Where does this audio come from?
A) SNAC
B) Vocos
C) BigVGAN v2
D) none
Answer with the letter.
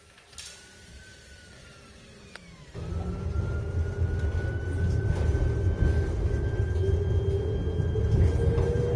D